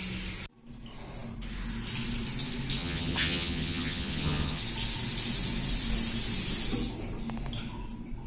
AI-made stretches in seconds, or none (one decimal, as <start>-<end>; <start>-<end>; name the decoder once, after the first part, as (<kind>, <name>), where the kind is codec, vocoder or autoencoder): 2.8-4.6 (vocoder, HiFi-GAN)